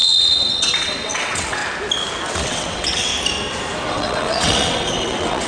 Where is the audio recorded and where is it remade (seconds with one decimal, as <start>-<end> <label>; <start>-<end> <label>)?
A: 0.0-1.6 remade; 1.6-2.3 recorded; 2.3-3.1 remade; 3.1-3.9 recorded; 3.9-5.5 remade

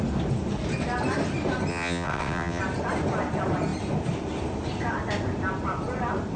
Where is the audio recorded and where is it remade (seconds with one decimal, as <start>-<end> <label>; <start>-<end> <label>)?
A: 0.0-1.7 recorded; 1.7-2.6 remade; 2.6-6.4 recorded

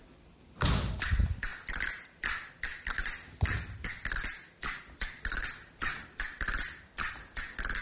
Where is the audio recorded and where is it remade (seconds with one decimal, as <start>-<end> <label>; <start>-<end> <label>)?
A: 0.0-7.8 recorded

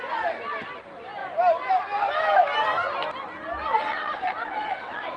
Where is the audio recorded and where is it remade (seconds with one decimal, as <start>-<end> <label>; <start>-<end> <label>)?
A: 0.0-3.7 recorded; 3.7-5.2 remade

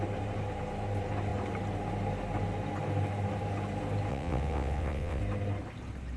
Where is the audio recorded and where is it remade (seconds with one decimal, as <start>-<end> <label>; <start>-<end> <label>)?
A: 0.0-4.1 recorded; 4.1-5.2 remade; 5.2-6.2 recorded